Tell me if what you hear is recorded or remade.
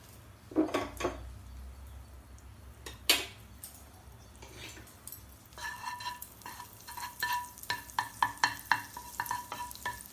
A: recorded